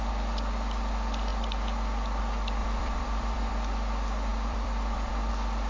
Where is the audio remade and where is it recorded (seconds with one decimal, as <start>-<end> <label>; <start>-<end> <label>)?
0.0-2.6 recorded; 2.6-3.5 remade; 3.5-4.3 recorded; 4.3-5.3 remade; 5.3-5.7 recorded